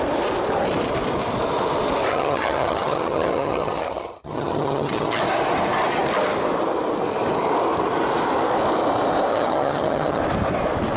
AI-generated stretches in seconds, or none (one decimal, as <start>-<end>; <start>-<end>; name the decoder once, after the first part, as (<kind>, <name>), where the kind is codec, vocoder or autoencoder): 2.1-5.2 (vocoder, HiFi-GAN); 9.3-10.2